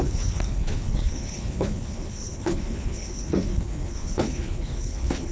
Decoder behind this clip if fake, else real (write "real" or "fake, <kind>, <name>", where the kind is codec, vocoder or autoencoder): fake, codec, HILCodec